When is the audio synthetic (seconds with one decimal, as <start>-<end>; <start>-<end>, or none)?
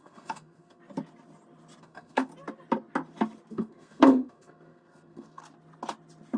0.0-0.8; 1.8-2.3; 3.5-5.4